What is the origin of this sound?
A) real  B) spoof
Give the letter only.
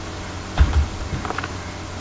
B